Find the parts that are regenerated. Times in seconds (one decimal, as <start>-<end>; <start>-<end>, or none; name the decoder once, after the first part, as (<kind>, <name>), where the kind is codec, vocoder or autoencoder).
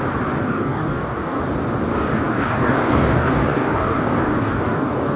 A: 0.4-1.4 (codec, DAC); 1.9-5.2